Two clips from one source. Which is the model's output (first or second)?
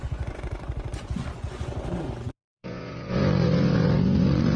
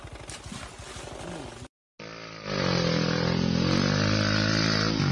first